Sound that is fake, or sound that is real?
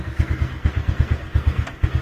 fake